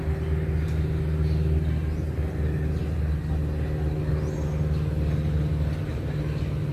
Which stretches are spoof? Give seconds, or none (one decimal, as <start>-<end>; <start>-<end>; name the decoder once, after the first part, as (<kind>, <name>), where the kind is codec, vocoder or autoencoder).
none